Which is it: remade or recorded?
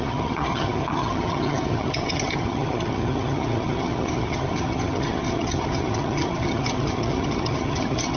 remade